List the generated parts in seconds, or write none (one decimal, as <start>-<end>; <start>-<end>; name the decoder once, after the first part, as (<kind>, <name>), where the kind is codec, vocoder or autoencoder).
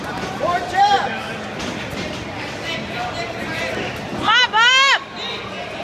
0.0-4.1 (vocoder, BigVGAN v2)